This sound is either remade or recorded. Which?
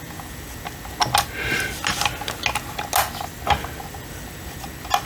recorded